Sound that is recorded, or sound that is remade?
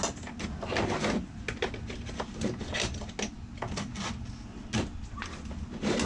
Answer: recorded